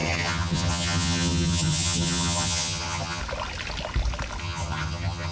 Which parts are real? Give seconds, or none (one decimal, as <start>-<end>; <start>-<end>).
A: 3.2-4.4